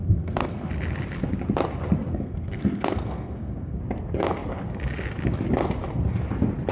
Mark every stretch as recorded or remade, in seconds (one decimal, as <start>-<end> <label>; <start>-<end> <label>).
0.0-0.7 remade; 0.7-2.1 recorded; 2.1-3.8 remade; 3.8-6.7 recorded

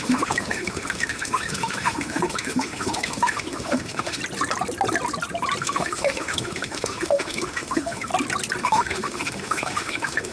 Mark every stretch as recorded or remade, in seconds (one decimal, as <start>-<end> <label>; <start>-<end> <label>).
0.0-4.2 remade; 4.2-5.6 recorded; 5.6-8.1 remade; 8.1-8.6 recorded; 8.6-10.3 remade

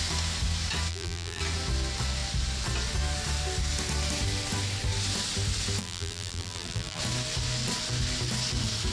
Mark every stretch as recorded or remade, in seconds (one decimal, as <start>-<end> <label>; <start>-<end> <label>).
0.0-0.9 recorded; 0.9-1.4 remade; 1.4-5.8 recorded; 5.8-7.0 remade; 7.0-8.9 recorded

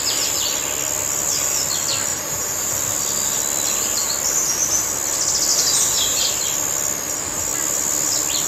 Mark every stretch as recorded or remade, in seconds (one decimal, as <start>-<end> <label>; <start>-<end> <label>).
0.0-2.1 recorded; 2.1-2.7 remade; 2.7-5.5 recorded; 5.5-6.2 remade; 6.2-8.5 recorded

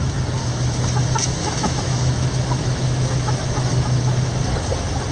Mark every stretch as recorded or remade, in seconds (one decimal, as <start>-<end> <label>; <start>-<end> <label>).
0.0-1.2 recorded; 1.2-4.3 remade; 4.3-5.1 recorded

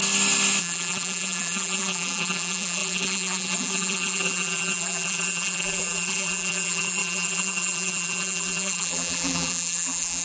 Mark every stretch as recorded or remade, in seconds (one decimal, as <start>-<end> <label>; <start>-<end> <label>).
0.0-0.6 recorded; 0.6-10.2 remade

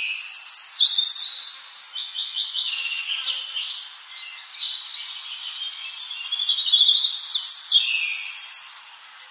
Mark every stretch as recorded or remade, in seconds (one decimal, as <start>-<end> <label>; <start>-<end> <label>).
0.0-2.0 recorded; 2.0-2.7 remade; 2.7-9.3 recorded

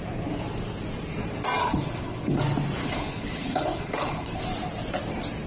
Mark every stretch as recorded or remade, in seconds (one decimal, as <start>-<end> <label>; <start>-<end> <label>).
0.0-1.6 recorded; 1.6-2.4 remade; 2.4-2.8 recorded; 2.8-4.4 remade; 4.4-5.5 recorded